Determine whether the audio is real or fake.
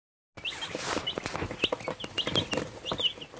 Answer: real